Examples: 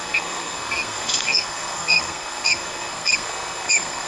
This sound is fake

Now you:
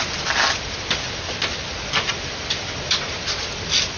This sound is real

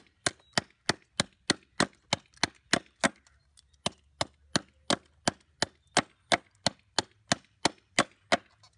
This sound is real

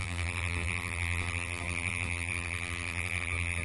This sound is fake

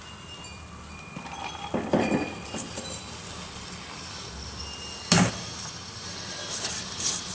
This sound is real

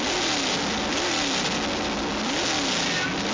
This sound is real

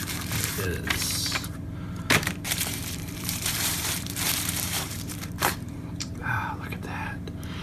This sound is fake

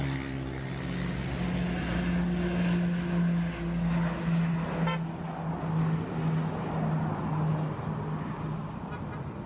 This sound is real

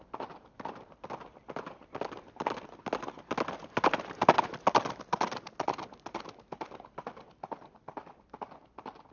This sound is real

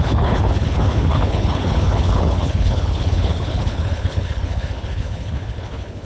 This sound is fake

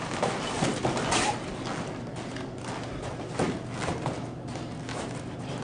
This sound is real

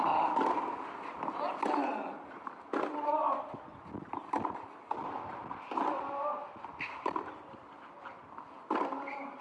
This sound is real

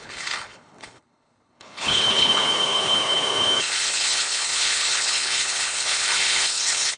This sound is fake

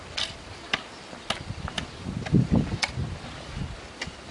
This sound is real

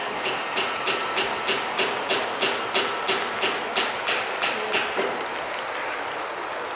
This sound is real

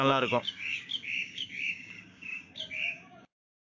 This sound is fake